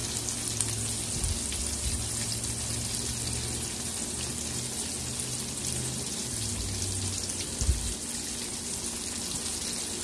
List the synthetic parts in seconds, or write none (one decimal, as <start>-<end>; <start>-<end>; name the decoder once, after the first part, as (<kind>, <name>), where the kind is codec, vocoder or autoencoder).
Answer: none